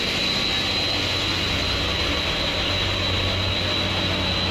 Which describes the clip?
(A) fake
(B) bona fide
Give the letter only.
B